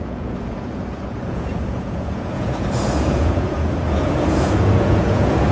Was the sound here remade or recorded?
remade